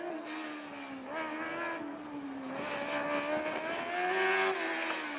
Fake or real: real